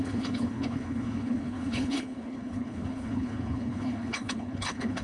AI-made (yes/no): yes